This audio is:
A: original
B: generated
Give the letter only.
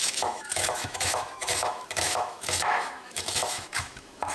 B